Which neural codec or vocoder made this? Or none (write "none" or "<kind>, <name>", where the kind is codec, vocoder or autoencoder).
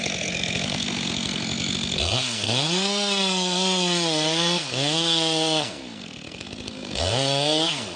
codec, SNAC